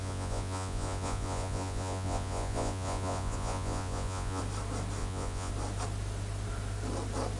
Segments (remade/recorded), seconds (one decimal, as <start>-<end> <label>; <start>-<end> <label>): 0.0-4.4 remade; 4.4-5.0 recorded; 5.0-5.5 remade; 5.5-7.4 recorded